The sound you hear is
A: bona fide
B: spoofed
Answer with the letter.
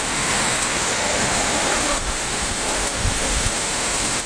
B